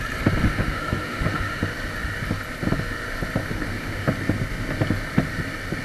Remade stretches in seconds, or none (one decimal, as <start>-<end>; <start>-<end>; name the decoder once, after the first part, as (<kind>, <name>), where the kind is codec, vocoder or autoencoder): 0.4-1.6 (autoencoder, DAC-VAE); 3.4-4.1